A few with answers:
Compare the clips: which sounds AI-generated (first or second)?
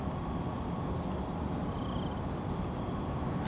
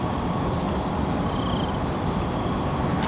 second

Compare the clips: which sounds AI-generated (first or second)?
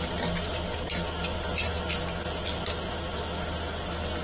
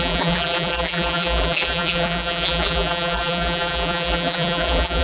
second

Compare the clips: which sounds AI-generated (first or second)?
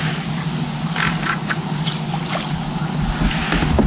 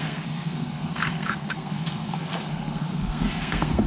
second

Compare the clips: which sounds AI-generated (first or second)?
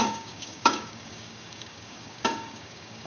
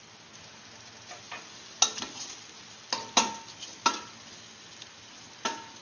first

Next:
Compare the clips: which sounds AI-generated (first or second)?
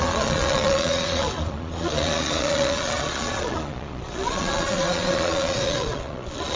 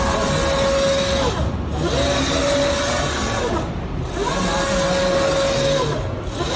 first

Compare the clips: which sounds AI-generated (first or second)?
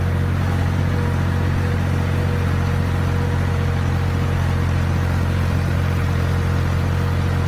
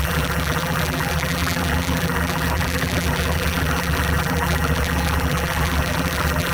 second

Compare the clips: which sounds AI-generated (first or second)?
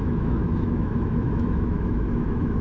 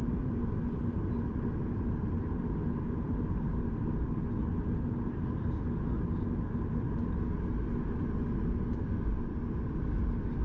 first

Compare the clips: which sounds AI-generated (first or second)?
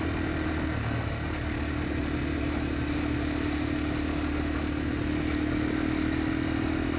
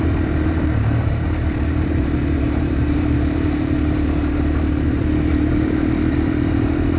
second